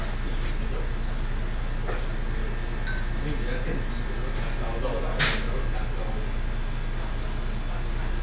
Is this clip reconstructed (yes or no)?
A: no